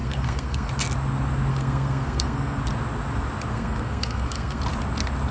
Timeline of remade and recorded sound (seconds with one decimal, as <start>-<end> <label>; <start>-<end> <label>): 0.0-0.7 remade; 0.7-1.5 recorded; 1.5-2.6 remade; 2.6-3.5 recorded; 3.5-4.6 remade; 4.6-5.3 recorded